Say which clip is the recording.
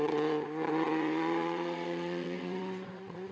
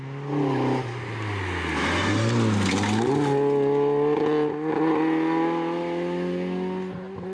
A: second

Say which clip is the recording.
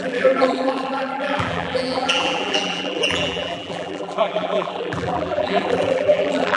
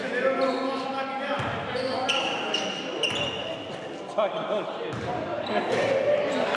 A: second